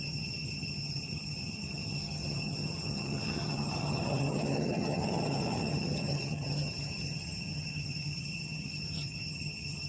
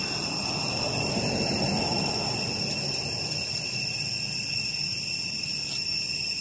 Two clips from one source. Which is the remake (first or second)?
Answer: first